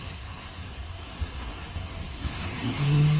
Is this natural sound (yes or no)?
no